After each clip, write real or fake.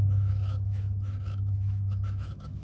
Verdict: fake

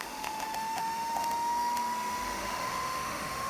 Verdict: fake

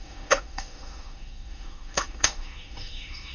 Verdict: fake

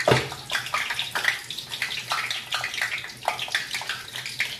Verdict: real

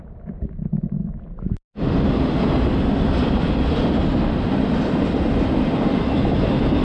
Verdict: real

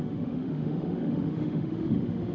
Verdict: fake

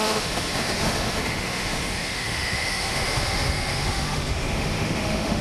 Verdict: fake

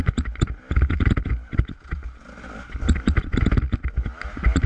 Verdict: real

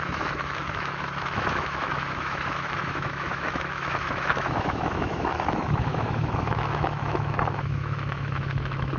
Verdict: fake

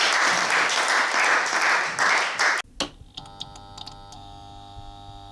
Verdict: real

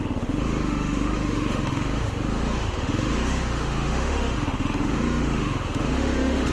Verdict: fake